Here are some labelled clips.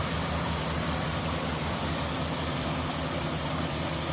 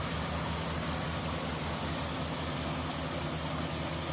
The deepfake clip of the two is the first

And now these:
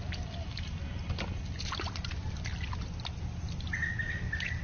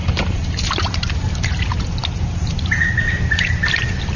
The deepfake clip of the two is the second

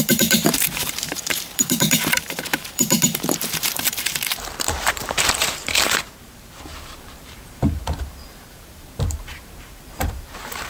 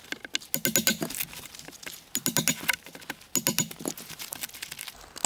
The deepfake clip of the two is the first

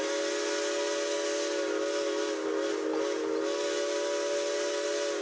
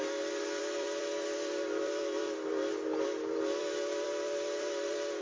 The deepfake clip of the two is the second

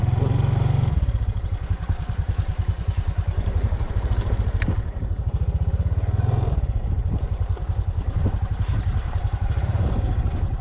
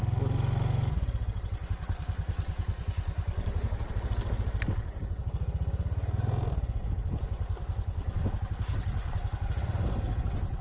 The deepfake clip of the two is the first